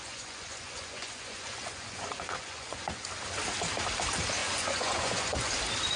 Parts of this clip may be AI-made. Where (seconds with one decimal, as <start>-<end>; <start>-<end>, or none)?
0.0-3.0; 4.4-5.6